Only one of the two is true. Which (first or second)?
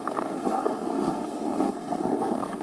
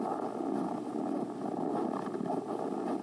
second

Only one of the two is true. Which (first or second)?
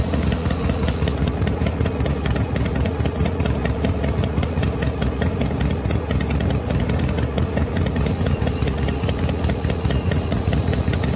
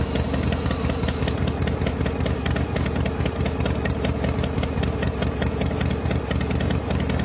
second